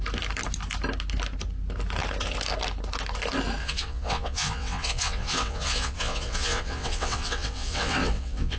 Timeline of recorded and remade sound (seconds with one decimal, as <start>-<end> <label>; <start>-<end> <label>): 0.0-3.6 recorded; 3.6-8.6 remade